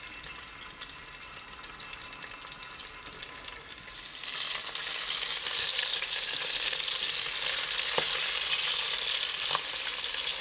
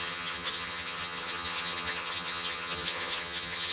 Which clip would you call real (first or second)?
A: first